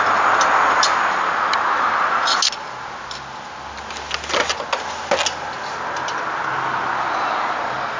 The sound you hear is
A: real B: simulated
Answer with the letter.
A